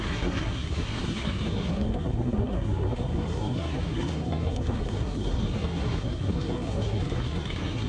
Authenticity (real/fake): fake